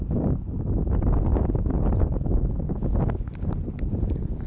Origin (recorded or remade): recorded